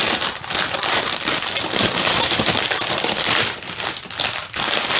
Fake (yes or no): no